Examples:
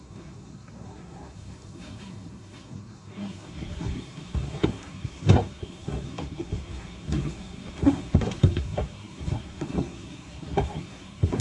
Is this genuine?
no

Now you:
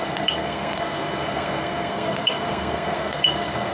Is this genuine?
no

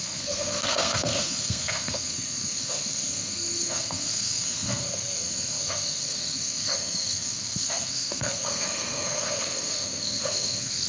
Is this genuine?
no